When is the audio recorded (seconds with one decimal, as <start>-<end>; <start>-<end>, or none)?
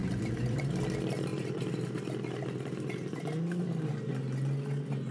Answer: 0.6-5.1